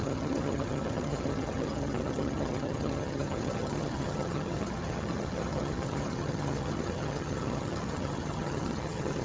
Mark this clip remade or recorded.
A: remade